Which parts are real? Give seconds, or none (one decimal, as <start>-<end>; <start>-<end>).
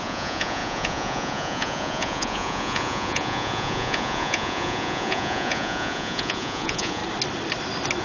7.0-8.0